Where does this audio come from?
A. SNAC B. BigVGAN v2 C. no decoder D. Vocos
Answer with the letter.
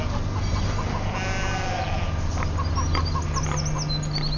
C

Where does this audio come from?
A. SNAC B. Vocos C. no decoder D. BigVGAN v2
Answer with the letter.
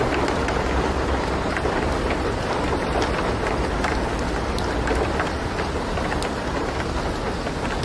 C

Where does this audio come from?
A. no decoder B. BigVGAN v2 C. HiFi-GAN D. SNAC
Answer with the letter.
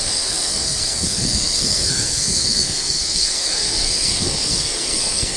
D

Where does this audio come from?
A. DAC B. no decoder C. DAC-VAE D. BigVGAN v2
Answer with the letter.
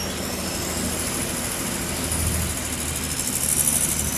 B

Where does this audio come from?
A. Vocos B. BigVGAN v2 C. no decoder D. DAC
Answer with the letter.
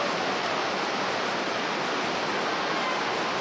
C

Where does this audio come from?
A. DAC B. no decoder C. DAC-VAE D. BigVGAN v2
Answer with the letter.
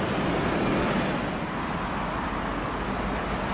B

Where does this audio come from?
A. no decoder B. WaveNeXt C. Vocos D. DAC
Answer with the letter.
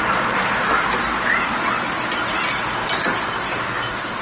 A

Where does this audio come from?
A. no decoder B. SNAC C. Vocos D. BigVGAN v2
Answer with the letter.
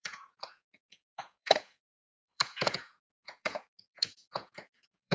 C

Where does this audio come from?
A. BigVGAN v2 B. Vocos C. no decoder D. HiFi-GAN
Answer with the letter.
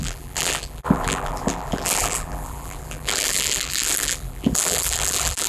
A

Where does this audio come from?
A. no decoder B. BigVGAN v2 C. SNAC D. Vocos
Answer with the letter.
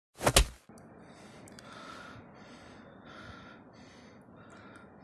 A